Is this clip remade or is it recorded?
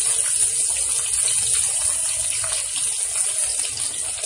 recorded